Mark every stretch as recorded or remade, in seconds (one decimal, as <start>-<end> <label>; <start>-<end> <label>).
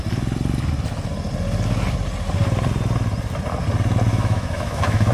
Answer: 0.0-4.1 recorded; 4.1-5.1 remade